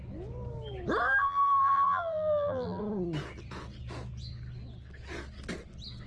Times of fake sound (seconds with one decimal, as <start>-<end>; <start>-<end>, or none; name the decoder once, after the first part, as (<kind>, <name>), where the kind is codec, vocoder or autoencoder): 1.2-2.8 (vocoder, BigVGAN v2)